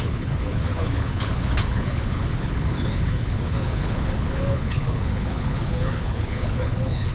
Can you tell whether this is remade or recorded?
remade